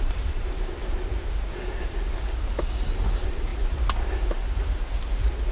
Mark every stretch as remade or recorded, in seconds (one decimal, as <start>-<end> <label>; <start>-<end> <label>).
0.0-5.5 remade